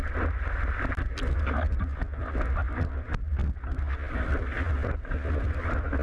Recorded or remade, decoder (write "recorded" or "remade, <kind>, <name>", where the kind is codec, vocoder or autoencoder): recorded